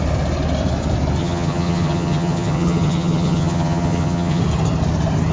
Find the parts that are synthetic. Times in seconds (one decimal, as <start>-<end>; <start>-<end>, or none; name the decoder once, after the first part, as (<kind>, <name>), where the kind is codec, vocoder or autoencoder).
1.2-4.4 (vocoder, HiFi-GAN)

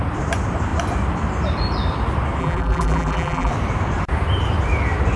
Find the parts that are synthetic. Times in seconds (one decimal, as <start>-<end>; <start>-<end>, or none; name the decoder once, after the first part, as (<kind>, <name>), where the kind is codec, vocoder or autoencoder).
2.4-3.5 (vocoder, BigVGAN v2)

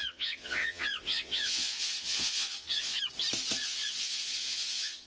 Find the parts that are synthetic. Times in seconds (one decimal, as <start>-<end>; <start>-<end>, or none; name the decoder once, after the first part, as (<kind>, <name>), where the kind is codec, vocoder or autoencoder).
0.0-3.0 (vocoder, Vocos); 3.6-5.1

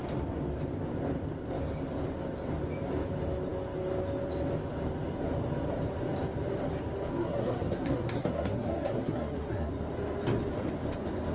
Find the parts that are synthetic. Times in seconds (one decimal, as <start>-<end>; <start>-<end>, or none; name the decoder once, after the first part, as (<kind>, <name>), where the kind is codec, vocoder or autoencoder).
7.1-9.7 (codec, SNAC)